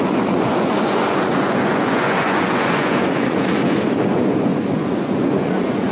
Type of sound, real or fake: fake